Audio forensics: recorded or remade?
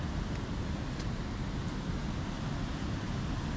recorded